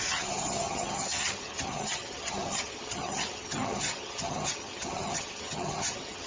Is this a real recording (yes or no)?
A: no